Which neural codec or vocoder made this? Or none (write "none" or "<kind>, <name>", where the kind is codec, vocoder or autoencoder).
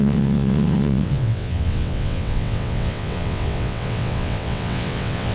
vocoder, WaveNeXt